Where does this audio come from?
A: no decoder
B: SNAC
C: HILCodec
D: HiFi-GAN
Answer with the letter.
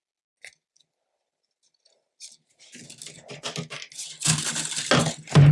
A